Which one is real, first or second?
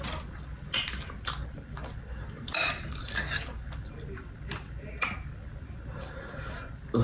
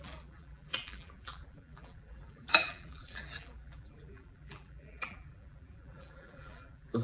first